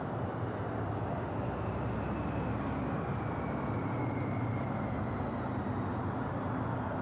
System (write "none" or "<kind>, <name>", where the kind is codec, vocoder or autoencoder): none